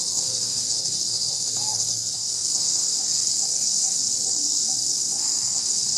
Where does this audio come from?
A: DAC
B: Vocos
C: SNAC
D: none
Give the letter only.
C